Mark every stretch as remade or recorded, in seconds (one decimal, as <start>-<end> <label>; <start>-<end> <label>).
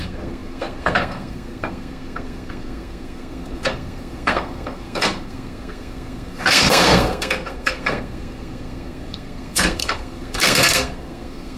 0.0-11.6 remade